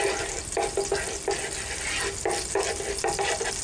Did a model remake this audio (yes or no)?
no